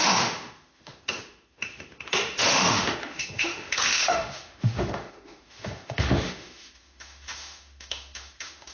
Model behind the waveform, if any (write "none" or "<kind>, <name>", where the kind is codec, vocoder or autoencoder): autoencoder, DAC-VAE